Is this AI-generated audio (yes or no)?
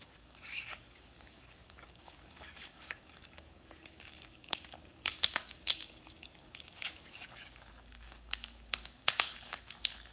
yes